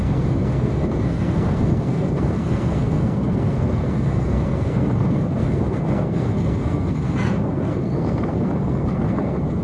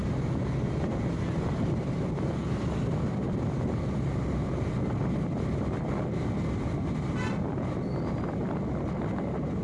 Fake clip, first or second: first